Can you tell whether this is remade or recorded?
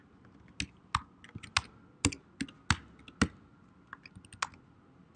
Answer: recorded